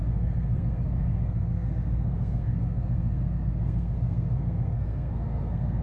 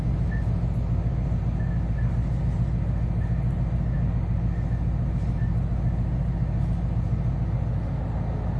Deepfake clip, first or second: first